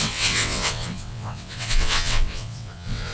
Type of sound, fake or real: fake